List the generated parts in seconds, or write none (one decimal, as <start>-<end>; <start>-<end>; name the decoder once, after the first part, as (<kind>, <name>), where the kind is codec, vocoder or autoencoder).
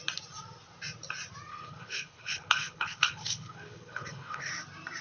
1.5-4.5 (codec, HILCodec)